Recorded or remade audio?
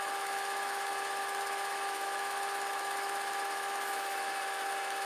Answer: remade